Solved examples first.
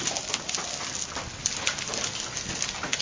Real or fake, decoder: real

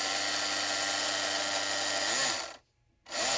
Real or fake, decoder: real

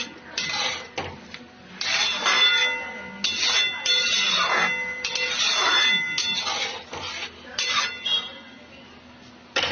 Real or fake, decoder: real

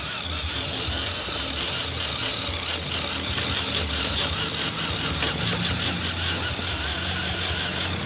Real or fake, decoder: real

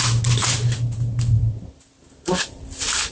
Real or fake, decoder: real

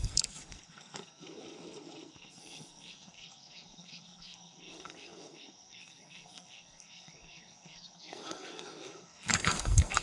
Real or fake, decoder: fake, codec, SNAC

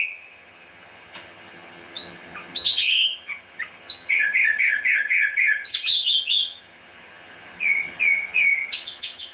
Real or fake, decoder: fake, vocoder, HiFi-GAN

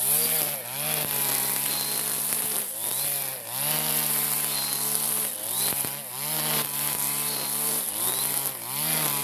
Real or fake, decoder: real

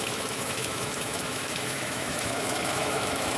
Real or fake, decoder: fake, autoencoder, DAC-VAE